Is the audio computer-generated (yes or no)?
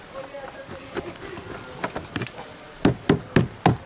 no